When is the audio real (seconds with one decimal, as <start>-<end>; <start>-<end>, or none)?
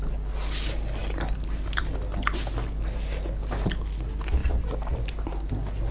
0.0-5.9